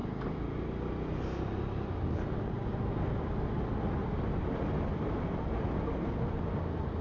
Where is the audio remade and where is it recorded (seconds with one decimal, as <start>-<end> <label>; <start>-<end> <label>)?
0.0-7.0 recorded